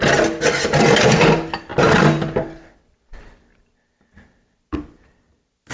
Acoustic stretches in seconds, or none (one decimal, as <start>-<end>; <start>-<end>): 0.0-5.7